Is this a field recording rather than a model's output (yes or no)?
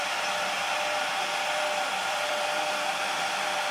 no